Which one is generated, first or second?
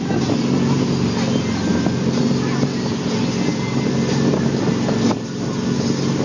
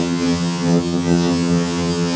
second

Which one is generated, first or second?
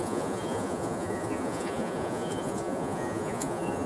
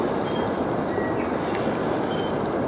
first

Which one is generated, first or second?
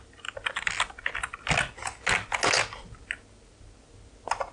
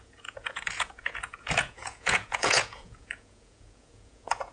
second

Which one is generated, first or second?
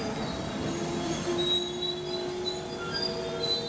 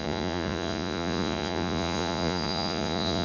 second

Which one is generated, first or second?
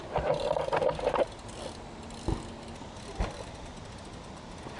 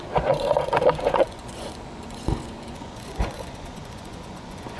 second